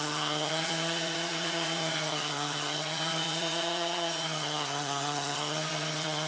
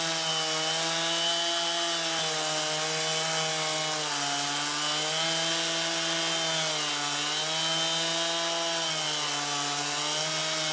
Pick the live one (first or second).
second